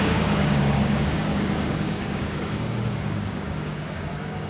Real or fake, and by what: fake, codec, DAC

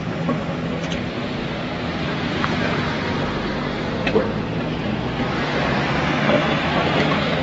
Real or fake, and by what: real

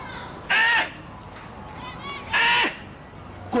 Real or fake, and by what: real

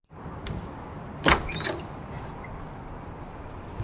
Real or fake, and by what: real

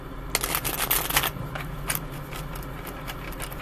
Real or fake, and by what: real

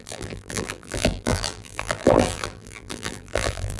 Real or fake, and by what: fake, vocoder, BigVGAN v2